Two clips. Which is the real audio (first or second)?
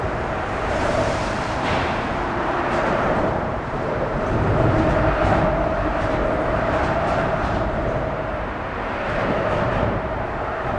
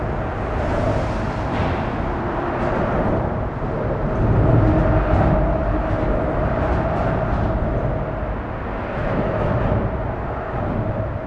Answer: second